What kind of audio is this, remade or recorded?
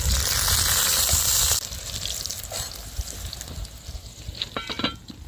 recorded